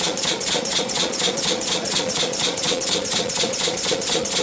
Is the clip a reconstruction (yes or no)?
yes